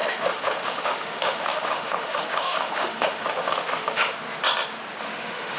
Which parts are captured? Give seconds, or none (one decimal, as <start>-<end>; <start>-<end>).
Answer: 4.0-5.0